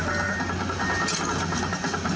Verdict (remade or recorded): recorded